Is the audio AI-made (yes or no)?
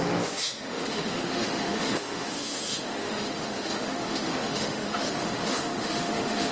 yes